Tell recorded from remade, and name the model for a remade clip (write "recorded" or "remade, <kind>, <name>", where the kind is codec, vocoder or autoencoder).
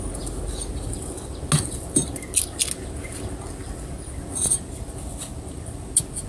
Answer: recorded